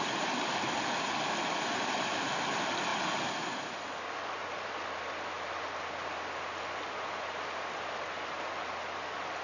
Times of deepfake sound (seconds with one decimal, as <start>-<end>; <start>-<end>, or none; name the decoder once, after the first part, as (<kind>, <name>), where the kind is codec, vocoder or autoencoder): none